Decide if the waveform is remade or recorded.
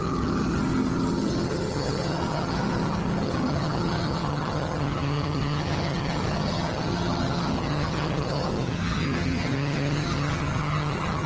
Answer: remade